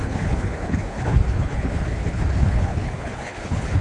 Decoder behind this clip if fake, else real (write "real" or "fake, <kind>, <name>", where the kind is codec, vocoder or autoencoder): fake, codec, HILCodec